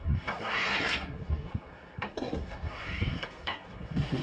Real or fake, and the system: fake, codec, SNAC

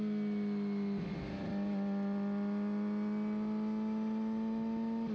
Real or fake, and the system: real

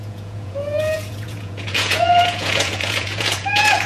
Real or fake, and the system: fake, vocoder, Vocos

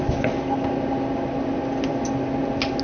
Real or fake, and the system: real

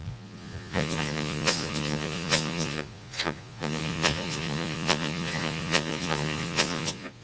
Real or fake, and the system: fake, vocoder, Vocos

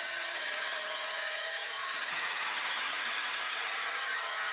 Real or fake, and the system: fake, vocoder, HiFi-GAN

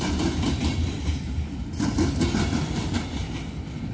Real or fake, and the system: fake, vocoder, BigVGAN v2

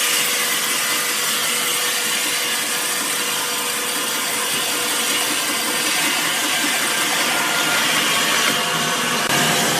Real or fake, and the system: real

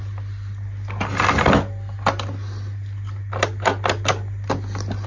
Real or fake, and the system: real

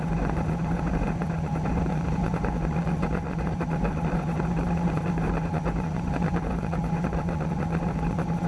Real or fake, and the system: fake, vocoder, Vocos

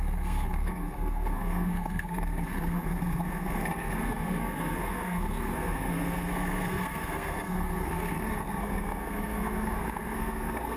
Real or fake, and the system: fake, codec, SNAC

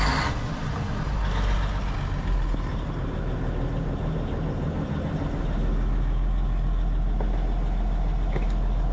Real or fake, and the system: real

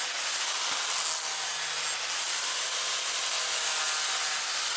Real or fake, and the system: real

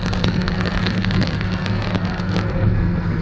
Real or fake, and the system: fake, codec, SNAC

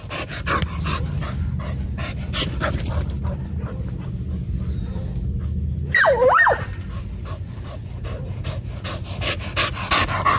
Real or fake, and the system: real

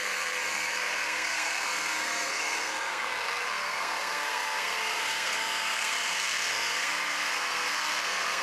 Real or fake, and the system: fake, codec, SNAC